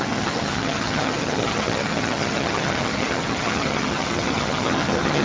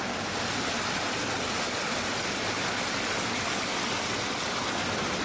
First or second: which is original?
second